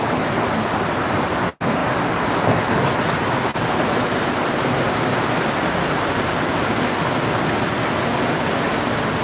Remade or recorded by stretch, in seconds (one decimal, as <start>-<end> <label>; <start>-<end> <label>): 0.0-9.2 recorded